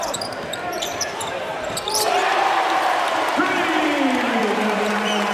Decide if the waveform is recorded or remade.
remade